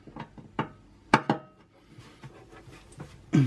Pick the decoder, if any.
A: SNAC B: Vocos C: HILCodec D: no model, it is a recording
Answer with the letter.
D